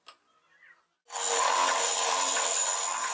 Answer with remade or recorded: recorded